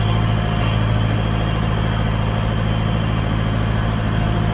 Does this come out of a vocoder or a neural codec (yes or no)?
no